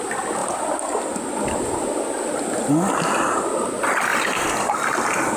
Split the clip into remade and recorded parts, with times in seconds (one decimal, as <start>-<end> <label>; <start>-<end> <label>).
0.0-5.4 recorded